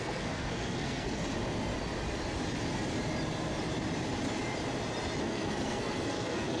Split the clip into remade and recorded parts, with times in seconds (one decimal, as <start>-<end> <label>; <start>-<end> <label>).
0.0-1.2 remade; 1.2-5.2 recorded; 5.2-6.6 remade